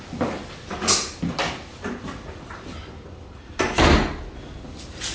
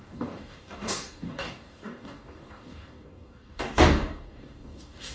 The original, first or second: first